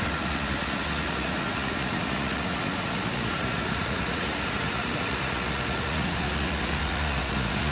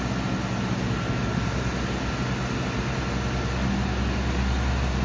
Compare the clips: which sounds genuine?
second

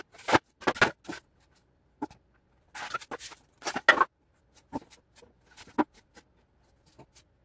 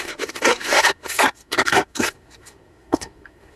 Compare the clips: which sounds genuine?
first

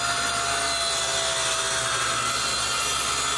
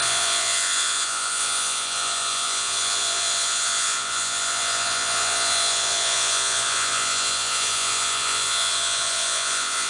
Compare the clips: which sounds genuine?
first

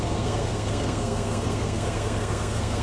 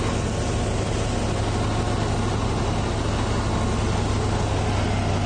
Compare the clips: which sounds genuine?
second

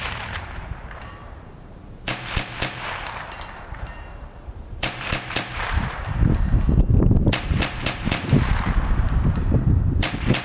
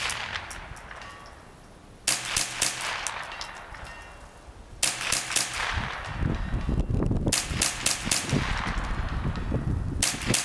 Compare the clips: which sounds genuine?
second